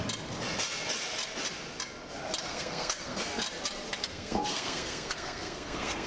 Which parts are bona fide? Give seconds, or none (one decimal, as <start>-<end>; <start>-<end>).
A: 0.0-2.5; 3.4-4.0